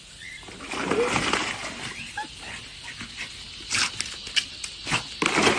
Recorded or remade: recorded